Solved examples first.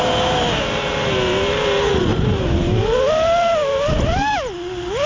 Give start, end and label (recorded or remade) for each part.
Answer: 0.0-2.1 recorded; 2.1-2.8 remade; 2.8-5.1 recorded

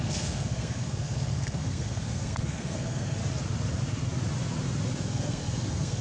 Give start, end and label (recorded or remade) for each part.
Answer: 0.0-3.2 remade; 3.2-5.0 recorded; 5.0-6.0 remade

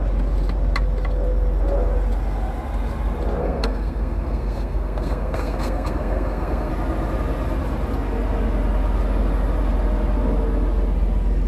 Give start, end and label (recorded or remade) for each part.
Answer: 0.0-3.4 recorded; 3.4-6.7 remade; 6.7-11.5 recorded

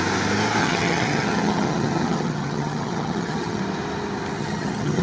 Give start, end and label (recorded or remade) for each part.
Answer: 0.0-0.6 recorded; 0.6-3.6 remade; 3.6-4.4 recorded; 4.4-5.0 remade

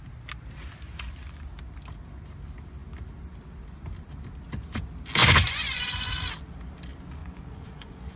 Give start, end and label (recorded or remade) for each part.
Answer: 0.0-5.2 recorded; 5.2-6.1 remade; 6.1-7.2 recorded; 7.2-8.2 remade

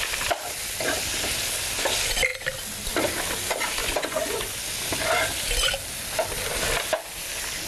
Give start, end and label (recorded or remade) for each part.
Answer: 0.0-3.8 recorded; 3.8-4.6 remade; 4.6-7.7 recorded

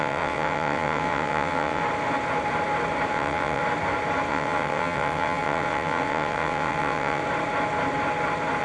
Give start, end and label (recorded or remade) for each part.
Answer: 0.0-1.8 remade; 1.8-3.1 recorded; 3.1-3.6 remade; 3.6-4.3 recorded; 4.3-7.2 remade; 7.2-8.6 recorded

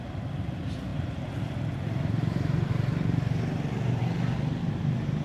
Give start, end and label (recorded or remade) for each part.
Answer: 0.0-0.9 recorded; 0.9-4.0 remade; 4.0-5.2 recorded